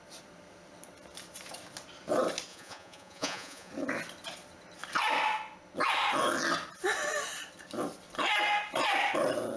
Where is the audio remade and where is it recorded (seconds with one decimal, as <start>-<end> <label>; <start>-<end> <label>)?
0.0-2.5 recorded; 2.5-3.7 remade; 3.7-9.6 recorded